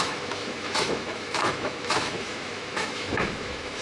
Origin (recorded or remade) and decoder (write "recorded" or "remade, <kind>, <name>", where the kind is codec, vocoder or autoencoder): remade, autoencoder, DAC-VAE